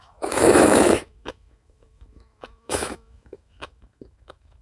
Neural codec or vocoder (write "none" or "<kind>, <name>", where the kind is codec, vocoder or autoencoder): autoencoder, DAC-VAE